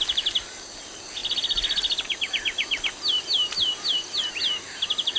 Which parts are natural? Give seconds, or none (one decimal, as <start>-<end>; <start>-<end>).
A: 0.0-5.2